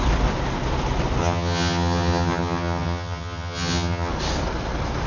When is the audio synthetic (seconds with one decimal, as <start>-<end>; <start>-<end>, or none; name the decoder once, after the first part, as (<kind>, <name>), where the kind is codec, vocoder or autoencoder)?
1.2-4.1 (vocoder, HiFi-GAN)